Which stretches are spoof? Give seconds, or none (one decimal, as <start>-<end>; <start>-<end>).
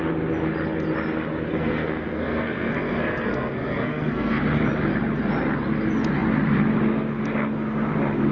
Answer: 1.5-4.4